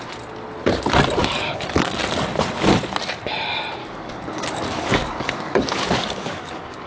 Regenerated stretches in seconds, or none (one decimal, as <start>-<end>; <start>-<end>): 1.2-2.0; 3.8-6.9